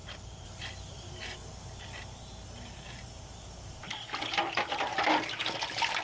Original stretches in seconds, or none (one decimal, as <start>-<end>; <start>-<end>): 1.2-4.4; 5.4-6.0